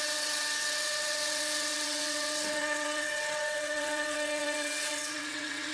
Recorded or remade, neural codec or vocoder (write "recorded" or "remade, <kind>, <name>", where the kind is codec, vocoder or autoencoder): remade, vocoder, WaveNeXt